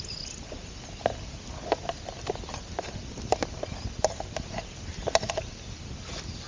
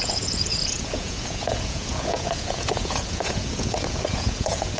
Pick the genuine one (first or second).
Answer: first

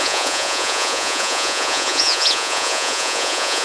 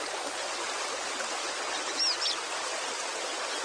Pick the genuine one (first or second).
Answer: second